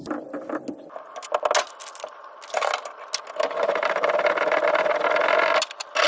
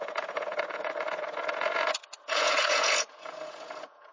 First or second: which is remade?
second